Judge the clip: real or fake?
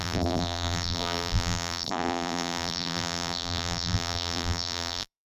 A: fake